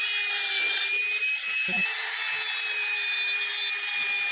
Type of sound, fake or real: real